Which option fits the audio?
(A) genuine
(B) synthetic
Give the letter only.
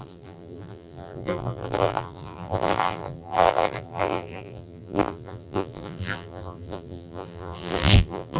B